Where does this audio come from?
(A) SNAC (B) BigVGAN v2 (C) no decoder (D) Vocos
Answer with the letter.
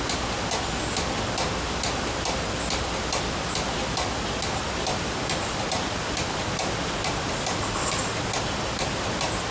C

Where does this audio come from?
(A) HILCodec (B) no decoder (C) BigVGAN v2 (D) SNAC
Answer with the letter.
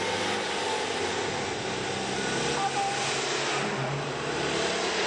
B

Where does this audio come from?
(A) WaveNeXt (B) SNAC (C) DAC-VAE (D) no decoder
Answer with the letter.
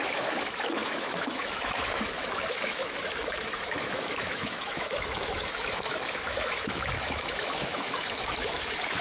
C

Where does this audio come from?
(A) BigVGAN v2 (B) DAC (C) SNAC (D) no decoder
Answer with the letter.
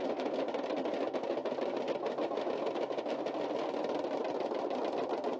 D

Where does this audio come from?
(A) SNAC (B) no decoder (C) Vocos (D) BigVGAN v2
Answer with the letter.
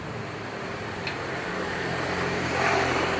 D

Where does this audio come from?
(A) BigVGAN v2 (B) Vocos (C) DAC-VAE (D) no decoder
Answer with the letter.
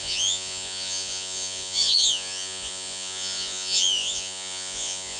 B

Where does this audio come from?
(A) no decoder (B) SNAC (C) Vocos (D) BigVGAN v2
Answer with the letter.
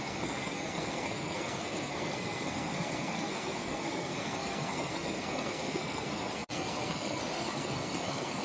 B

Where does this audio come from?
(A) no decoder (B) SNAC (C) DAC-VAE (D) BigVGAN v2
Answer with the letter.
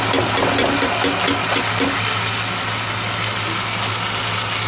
A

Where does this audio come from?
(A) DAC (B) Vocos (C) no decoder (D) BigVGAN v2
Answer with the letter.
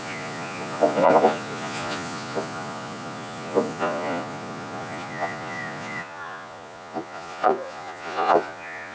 B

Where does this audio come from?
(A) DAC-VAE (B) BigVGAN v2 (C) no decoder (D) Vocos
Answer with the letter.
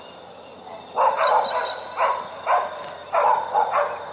C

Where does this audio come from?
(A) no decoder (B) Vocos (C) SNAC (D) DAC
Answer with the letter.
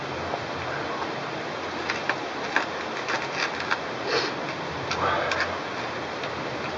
A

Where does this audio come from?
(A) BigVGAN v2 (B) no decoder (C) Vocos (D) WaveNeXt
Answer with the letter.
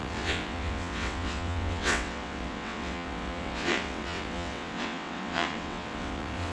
D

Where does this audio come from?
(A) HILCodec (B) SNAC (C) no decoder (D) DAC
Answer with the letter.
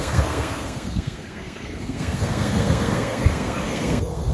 B